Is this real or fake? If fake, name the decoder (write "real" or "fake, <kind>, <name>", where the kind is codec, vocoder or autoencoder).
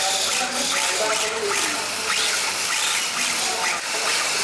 real